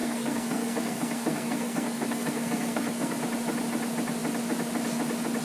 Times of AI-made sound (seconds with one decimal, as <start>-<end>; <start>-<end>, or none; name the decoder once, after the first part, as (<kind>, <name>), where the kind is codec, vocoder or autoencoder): 0.0-3.2 (codec, SNAC)